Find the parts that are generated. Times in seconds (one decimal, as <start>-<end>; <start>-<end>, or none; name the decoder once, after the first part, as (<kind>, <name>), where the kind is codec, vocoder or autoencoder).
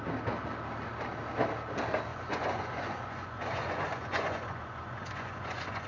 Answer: 2.1-5.9 (vocoder, Vocos)